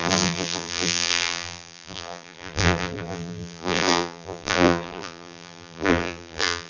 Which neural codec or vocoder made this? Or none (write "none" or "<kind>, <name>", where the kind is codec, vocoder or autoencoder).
vocoder, BigVGAN v2